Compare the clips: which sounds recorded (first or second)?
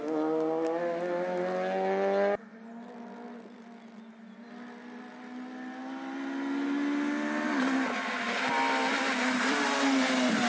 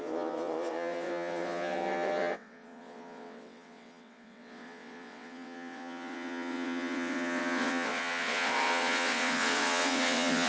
first